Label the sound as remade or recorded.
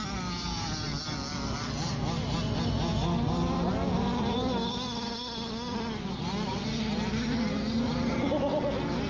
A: recorded